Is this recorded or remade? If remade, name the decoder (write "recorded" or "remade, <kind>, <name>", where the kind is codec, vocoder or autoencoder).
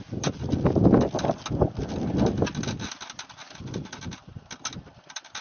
recorded